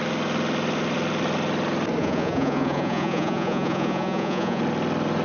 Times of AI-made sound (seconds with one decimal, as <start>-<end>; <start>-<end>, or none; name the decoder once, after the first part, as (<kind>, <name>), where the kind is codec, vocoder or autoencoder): 2.0-4.6 (vocoder, Vocos)